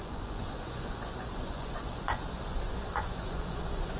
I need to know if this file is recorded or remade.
remade